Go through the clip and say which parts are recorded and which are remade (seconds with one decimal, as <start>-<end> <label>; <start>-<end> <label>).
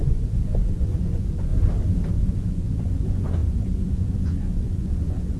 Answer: 0.0-1.5 remade; 1.5-2.1 recorded; 2.1-5.4 remade